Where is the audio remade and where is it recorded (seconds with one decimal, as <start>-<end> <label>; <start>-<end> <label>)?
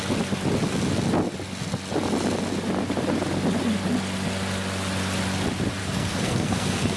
0.0-5.8 recorded; 5.8-7.0 remade